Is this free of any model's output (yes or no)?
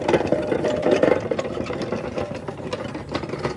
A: no